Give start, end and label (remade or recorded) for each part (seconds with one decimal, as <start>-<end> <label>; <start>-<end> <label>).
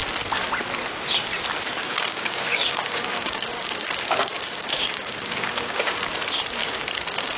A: 0.0-1.8 recorded; 1.8-6.1 remade; 6.1-6.6 recorded; 6.6-7.4 remade